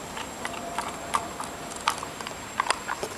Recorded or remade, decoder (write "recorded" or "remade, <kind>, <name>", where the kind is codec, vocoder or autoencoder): remade, vocoder, BigVGAN v2